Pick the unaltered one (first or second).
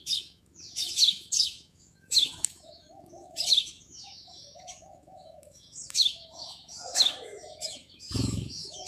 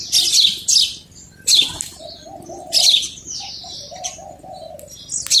second